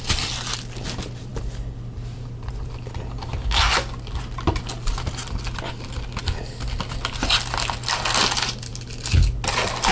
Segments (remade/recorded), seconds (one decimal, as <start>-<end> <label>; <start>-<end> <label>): 0.0-9.9 recorded

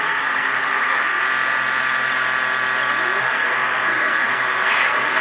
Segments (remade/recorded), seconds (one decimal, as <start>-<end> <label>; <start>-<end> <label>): 0.0-1.2 remade; 1.2-3.2 recorded; 3.2-5.2 remade

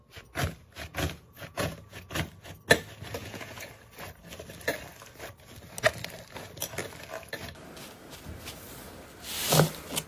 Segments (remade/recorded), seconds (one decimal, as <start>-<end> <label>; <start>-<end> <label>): 0.0-0.9 recorded; 0.9-2.1 remade; 2.1-3.2 recorded; 3.2-3.7 remade; 3.7-10.1 recorded